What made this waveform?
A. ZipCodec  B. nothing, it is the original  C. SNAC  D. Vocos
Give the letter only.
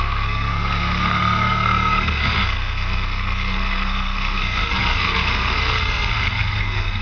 C